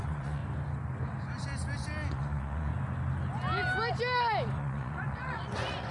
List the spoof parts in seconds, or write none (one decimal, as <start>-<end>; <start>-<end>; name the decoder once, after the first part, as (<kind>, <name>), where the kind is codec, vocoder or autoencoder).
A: 0.0-0.4 (vocoder, Vocos); 2.1-2.7; 4.5-5.9